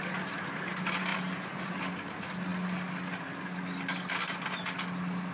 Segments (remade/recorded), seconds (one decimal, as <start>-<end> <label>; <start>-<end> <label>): 0.0-1.1 recorded; 1.1-1.8 remade; 1.8-5.3 recorded